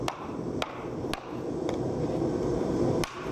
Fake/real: real